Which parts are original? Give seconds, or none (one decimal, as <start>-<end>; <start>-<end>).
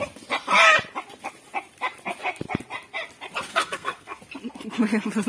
0.0-3.5; 4.2-5.3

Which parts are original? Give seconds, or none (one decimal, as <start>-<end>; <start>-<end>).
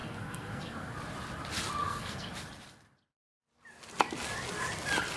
0.9-1.8; 2.3-5.2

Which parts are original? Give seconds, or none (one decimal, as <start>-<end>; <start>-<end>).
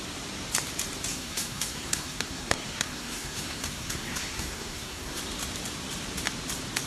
0.0-1.1; 5.2-6.9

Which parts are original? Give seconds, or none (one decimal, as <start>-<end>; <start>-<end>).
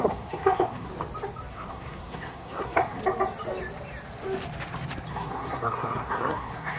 0.9-1.5; 3.0-5.1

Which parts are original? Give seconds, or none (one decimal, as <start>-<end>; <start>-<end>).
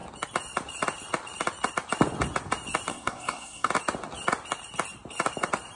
0.0-2.9; 3.7-5.8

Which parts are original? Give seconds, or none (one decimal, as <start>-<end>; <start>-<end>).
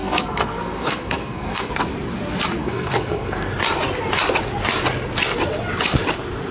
1.7-2.6; 3.5-6.5